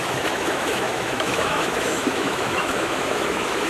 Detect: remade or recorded remade